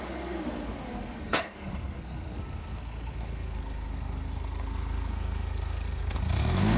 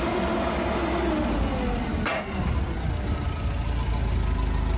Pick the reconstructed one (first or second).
first